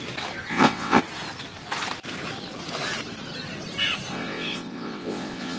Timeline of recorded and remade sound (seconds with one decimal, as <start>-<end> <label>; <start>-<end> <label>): 0.0-0.5 recorded; 0.5-1.0 remade; 1.0-4.1 recorded; 4.1-5.6 remade